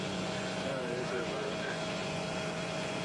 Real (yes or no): no